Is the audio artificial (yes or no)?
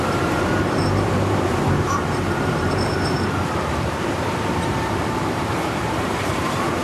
yes